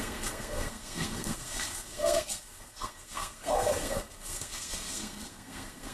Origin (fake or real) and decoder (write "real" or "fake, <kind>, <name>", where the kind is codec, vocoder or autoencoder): fake, codec, SNAC